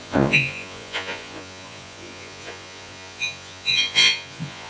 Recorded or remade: remade